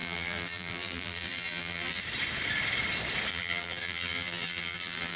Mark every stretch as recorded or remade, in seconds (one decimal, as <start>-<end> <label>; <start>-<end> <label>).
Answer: 0.0-2.0 remade; 2.0-3.3 recorded; 3.3-5.2 remade